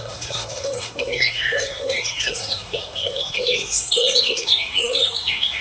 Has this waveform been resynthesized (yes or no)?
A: yes